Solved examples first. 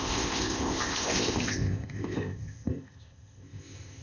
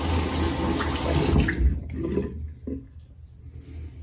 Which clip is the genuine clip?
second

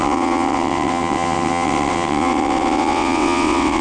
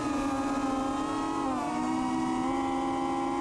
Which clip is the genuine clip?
second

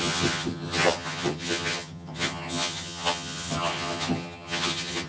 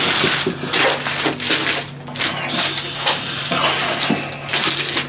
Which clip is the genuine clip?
second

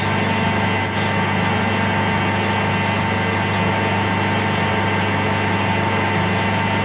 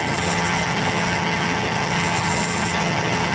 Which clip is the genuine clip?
first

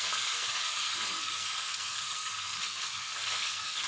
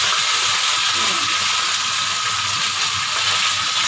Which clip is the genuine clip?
second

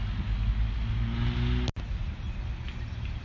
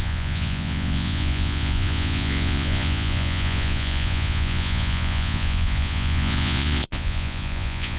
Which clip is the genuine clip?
first